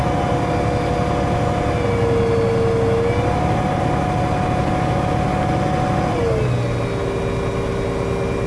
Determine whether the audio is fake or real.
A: real